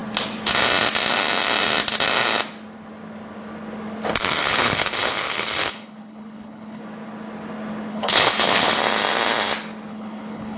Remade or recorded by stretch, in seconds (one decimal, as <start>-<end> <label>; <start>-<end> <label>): 0.0-4.4 recorded; 4.4-6.8 remade; 6.8-7.9 recorded; 7.9-8.8 remade; 8.8-9.9 recorded; 9.9-10.6 remade